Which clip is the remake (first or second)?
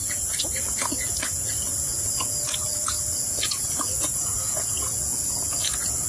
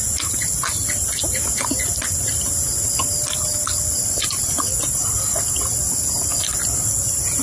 first